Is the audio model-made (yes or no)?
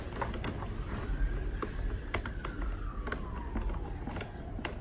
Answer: no